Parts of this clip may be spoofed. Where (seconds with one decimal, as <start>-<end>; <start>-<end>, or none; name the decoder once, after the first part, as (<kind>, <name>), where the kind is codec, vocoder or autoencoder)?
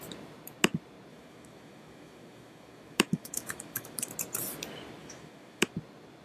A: 1.1-4.1 (autoencoder, DAC-VAE); 5.0-5.7